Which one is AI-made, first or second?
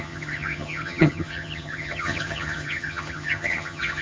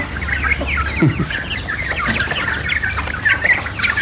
first